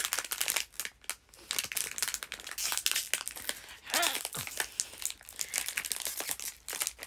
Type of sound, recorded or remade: recorded